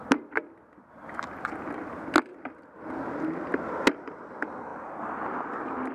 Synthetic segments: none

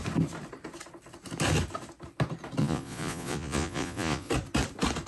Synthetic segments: 2.6-4.3 (vocoder, Vocos)